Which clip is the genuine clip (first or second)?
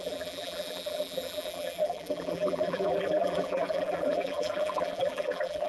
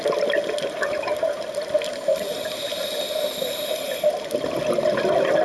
second